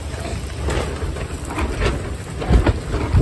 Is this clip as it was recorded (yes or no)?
yes